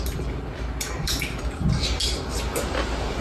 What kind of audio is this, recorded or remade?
recorded